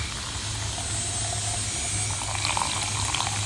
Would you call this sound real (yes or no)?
yes